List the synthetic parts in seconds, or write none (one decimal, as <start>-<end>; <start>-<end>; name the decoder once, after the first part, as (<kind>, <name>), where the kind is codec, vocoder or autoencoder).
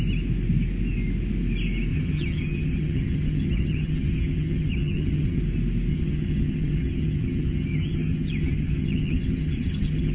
1.9-5.4 (vocoder, HiFi-GAN); 5.9-10.1